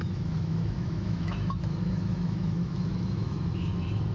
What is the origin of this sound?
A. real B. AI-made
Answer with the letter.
B